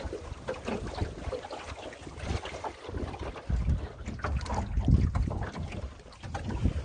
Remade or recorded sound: recorded